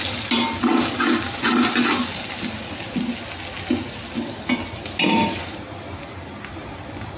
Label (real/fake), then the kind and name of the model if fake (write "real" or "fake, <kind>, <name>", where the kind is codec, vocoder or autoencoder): real